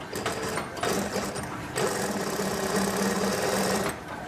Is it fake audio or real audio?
real